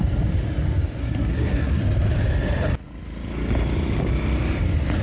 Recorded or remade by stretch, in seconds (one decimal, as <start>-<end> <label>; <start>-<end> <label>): 0.0-1.0 recorded; 1.0-1.8 remade; 1.8-5.0 recorded